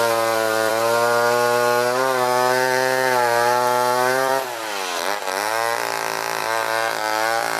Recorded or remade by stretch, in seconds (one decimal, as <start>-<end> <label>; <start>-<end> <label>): 0.0-7.6 remade